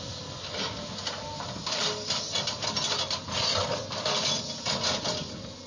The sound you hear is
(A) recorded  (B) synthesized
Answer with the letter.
A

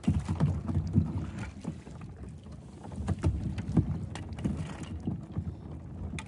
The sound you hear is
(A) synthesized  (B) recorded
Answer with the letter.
B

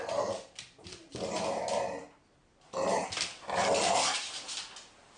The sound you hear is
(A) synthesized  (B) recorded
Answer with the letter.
B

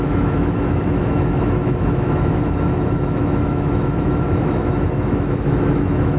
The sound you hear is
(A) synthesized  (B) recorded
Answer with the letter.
A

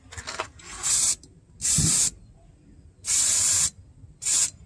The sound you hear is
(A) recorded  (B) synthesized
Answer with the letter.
A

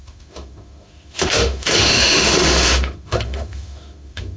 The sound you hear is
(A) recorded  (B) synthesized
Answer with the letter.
B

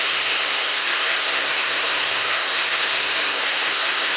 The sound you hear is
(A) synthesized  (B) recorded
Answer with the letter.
A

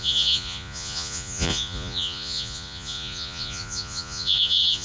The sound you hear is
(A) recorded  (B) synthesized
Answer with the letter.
B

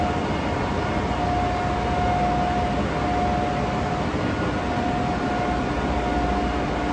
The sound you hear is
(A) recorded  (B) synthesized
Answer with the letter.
A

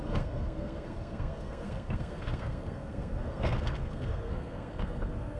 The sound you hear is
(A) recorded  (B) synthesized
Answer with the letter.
B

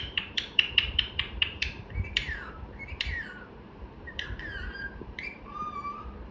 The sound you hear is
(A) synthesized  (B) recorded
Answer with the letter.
A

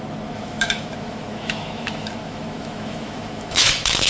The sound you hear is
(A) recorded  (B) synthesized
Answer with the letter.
B